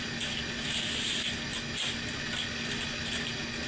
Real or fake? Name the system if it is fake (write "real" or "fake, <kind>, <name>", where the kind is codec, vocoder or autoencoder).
real